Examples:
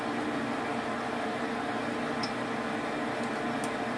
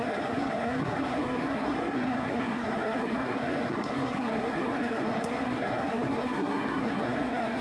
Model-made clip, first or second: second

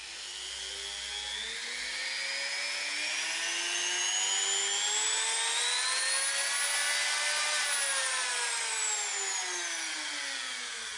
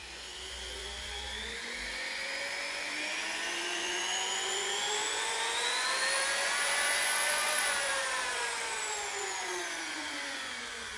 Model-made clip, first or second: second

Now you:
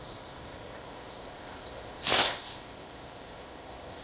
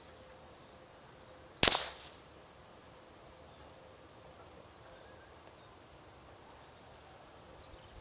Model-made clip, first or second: first